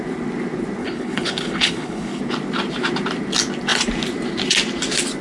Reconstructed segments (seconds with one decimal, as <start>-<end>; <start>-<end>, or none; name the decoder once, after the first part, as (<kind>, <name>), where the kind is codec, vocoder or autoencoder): 0.8-2.2 (codec, HILCodec)